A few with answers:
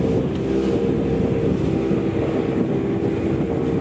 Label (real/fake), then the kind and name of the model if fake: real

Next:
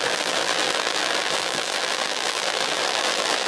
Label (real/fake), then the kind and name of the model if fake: fake, vocoder, BigVGAN v2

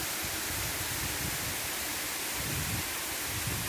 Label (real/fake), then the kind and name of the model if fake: real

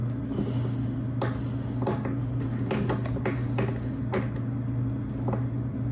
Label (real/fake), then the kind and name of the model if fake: real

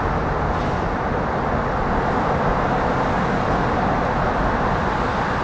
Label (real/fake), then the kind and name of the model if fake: real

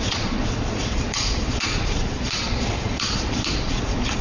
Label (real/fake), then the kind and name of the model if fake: fake, vocoder, Vocos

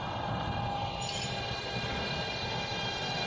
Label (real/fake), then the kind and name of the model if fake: real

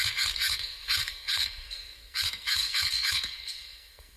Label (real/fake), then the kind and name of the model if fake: fake, codec, SNAC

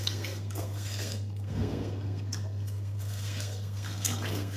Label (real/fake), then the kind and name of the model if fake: fake, codec, SNAC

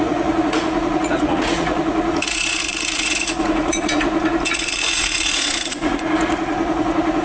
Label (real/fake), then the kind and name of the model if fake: fake, vocoder, Vocos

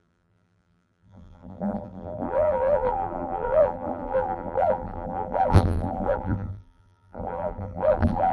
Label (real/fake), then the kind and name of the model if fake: fake, vocoder, BigVGAN v2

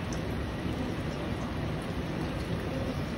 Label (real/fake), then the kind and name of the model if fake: fake, vocoder, BigVGAN v2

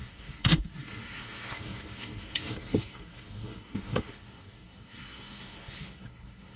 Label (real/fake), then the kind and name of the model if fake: fake, codec, SNAC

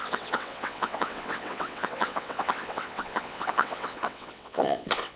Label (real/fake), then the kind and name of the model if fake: fake, vocoder, WaveNeXt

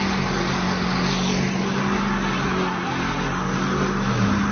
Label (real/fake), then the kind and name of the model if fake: real